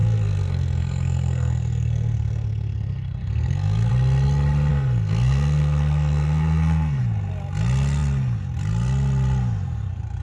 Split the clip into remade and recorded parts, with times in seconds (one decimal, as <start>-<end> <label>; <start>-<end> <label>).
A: 0.0-3.9 remade; 3.9-4.7 recorded; 4.7-7.0 remade; 7.0-10.2 recorded